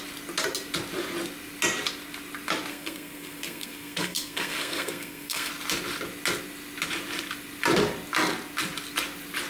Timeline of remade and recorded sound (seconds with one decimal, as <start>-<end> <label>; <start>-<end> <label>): 0.0-2.7 recorded; 2.7-5.5 remade; 5.5-9.5 recorded